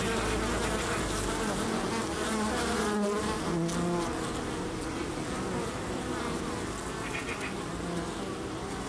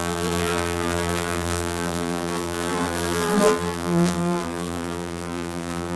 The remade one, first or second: second